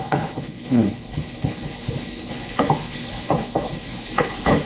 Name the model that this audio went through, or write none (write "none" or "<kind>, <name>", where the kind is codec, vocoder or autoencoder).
codec, HILCodec